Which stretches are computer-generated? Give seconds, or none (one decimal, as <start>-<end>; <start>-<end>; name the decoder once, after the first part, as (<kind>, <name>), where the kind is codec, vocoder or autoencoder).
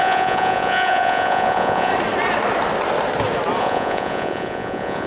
0.0-1.9 (vocoder, Vocos); 3.6-5.1